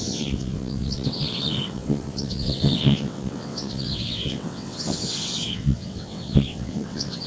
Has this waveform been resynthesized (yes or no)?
yes